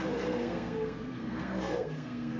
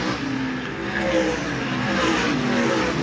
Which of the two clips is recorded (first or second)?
second